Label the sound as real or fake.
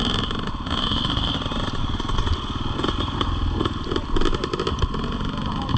real